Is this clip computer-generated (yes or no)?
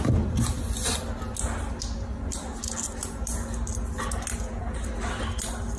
no